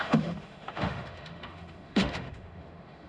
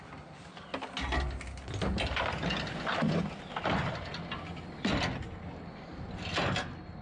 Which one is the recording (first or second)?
second